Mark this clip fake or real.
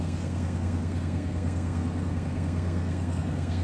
fake